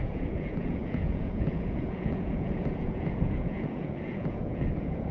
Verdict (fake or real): fake